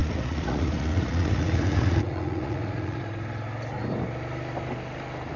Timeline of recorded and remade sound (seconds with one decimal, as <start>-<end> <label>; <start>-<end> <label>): 0.0-3.0 remade; 3.0-5.4 recorded